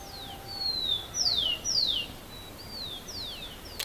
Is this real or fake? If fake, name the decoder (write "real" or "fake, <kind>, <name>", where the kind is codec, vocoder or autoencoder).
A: real